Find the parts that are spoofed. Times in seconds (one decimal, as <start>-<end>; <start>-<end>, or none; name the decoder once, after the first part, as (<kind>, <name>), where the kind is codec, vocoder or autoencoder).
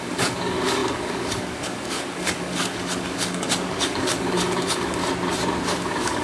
0.0-5.0 (codec, DAC); 5.7-6.2